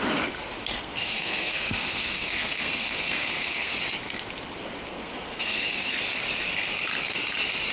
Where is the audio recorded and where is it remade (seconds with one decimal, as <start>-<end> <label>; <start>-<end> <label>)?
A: 0.0-0.7 recorded; 0.7-3.7 remade; 3.7-4.9 recorded; 4.9-6.0 remade; 6.0-7.7 recorded